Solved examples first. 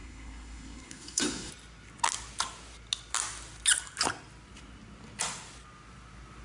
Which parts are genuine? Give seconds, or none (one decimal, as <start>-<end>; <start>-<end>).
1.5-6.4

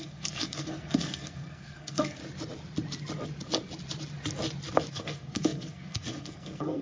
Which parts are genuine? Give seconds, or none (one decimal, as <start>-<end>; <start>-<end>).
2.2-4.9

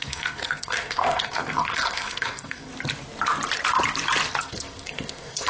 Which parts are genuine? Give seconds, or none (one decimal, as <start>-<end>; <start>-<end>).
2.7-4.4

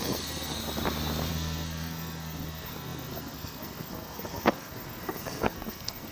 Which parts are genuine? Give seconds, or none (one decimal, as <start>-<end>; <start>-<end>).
0.6-1.3